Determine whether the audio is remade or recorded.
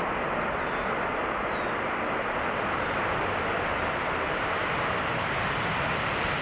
recorded